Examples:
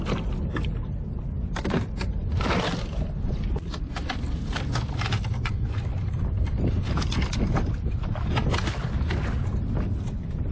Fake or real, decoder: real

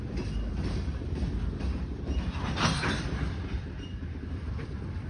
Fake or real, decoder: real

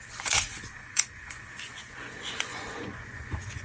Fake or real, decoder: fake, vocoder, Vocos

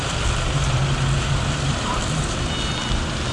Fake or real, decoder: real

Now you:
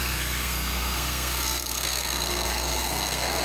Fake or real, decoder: fake, codec, SNAC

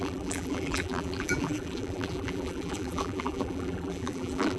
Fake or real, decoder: fake, vocoder, BigVGAN v2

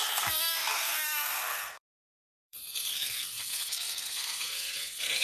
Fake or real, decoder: fake, codec, SNAC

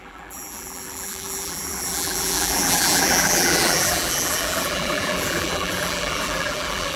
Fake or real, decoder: fake, vocoder, BigVGAN v2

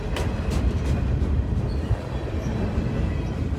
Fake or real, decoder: real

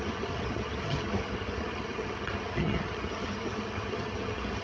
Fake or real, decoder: fake, vocoder, HiFi-GAN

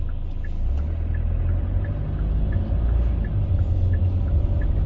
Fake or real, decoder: real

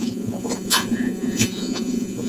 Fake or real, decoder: fake, vocoder, Vocos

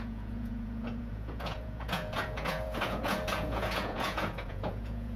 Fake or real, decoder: fake, vocoder, Vocos